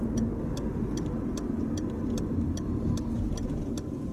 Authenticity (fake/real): real